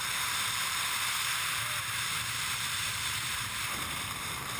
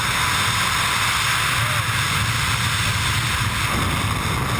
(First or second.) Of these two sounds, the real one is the second